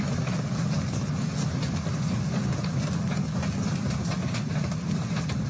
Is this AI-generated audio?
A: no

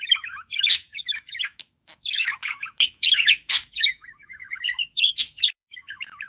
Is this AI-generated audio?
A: yes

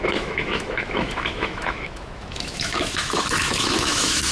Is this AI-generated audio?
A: yes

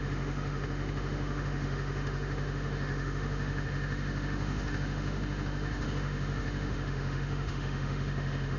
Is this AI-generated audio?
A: yes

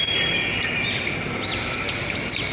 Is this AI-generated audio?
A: no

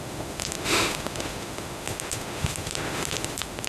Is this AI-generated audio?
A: yes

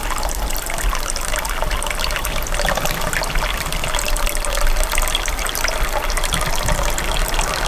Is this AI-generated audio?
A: no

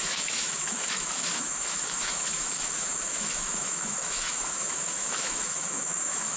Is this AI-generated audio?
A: yes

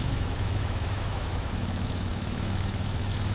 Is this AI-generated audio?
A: yes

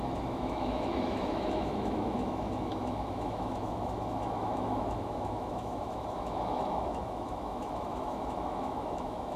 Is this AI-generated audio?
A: yes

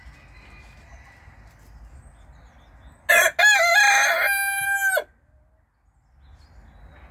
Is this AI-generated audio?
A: no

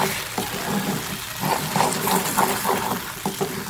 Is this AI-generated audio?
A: no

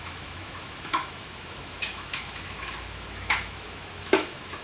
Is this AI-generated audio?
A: yes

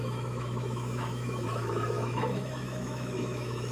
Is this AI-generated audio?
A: yes